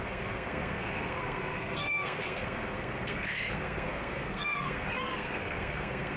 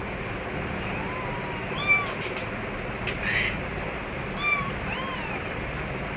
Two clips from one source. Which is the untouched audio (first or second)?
second